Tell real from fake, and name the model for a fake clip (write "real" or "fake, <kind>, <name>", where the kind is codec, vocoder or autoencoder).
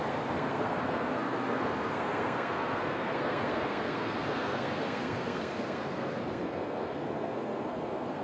fake, codec, SNAC